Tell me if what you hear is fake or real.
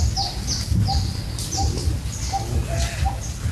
real